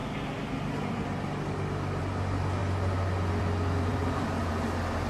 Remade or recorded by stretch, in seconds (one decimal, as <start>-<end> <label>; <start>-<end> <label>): 0.0-3.9 recorded; 3.9-4.5 remade; 4.5-5.1 recorded